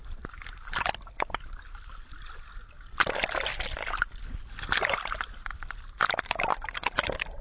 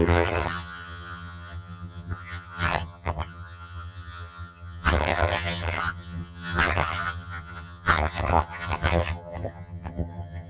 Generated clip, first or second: second